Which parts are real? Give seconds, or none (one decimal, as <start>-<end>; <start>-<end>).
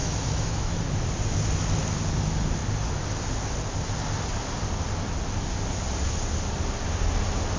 0.8-7.6